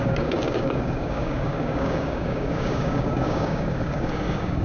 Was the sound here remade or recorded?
remade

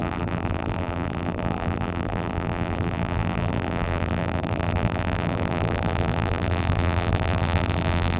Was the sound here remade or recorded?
remade